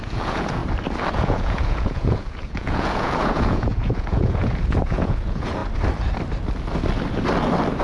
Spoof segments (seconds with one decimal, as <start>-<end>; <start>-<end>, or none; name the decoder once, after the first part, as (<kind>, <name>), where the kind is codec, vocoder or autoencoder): 0.0-0.6 (vocoder, Vocos); 1.1-5.6